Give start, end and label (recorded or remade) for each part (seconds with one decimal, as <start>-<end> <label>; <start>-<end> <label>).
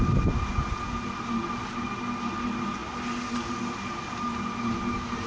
0.0-5.3 recorded